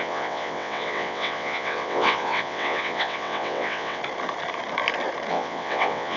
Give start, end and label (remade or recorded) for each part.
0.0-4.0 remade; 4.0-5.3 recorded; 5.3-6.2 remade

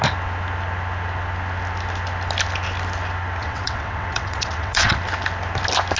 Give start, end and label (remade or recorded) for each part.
0.0-3.4 recorded; 3.4-5.0 remade; 5.0-6.0 recorded

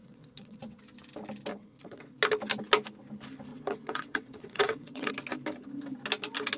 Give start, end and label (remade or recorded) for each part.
0.0-0.8 remade; 0.8-1.5 recorded; 1.5-2.2 remade; 2.2-3.5 recorded; 3.5-5.1 remade; 5.1-6.6 recorded

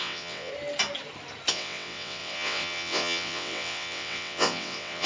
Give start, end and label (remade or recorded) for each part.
0.0-0.5 remade; 0.5-1.5 recorded; 1.5-5.1 remade

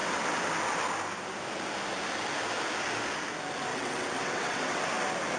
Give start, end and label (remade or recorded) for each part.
0.0-3.7 recorded; 3.7-4.8 remade; 4.8-5.4 recorded

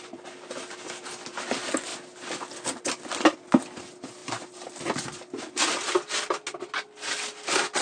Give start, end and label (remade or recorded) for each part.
0.0-7.8 recorded